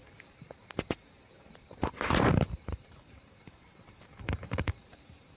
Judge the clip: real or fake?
fake